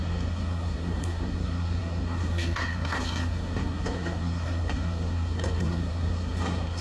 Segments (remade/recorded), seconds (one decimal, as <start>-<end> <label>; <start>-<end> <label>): 0.0-6.8 remade